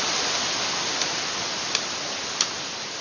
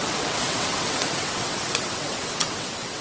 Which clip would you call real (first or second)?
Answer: first